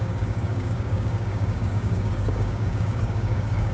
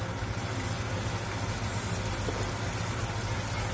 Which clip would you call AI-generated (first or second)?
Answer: first